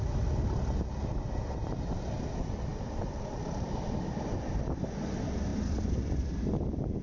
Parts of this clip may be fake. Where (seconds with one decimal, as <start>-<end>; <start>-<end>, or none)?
2.7-3.2